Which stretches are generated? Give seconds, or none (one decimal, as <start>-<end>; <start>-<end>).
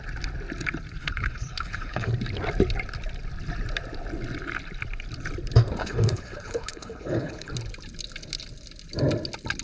1.0-2.1; 5.8-7.5